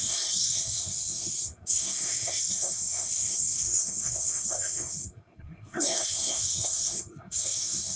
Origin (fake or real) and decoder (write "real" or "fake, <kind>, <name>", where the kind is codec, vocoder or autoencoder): fake, codec, SNAC